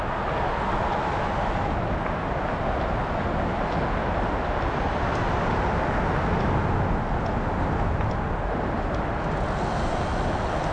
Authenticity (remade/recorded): recorded